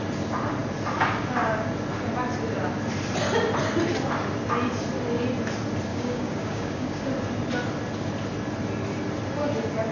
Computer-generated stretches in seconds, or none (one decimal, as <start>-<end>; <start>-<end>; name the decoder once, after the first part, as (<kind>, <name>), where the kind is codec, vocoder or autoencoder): 5.9-7.0 (codec, DAC)